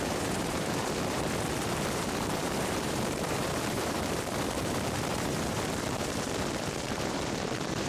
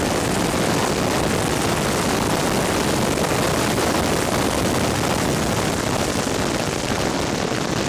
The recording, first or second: second